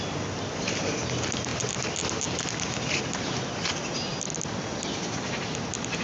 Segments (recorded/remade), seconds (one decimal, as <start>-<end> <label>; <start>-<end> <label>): 0.0-6.0 recorded